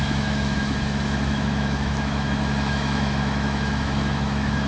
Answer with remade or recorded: remade